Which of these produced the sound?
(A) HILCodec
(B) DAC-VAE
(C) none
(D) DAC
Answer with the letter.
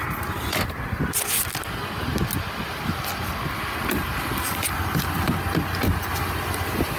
C